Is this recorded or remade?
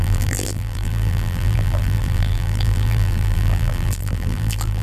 remade